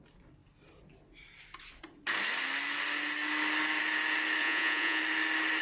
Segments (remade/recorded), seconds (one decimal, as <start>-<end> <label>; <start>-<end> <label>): 0.0-4.4 recorded; 4.4-5.0 remade; 5.0-5.6 recorded